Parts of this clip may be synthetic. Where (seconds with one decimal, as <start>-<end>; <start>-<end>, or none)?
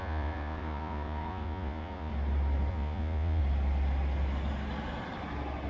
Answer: 0.0-2.1; 2.7-3.4